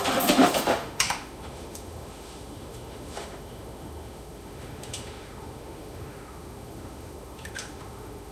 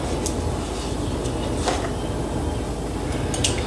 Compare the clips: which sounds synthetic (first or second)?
first